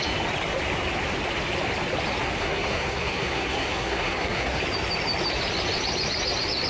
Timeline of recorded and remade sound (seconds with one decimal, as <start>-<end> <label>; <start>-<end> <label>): 0.0-2.4 recorded; 2.4-4.6 remade; 4.6-6.7 recorded